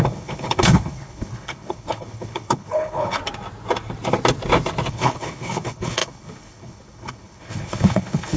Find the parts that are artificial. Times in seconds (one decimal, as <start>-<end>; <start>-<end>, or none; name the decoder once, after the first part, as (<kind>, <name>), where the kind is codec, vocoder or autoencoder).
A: 0.0-3.2 (codec, HILCodec); 4.9-8.4